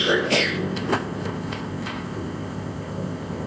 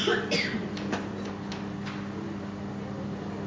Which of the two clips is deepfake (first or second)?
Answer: first